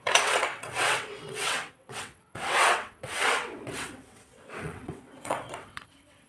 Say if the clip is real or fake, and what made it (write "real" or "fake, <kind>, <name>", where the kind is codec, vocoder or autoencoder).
fake, vocoder, WaveNeXt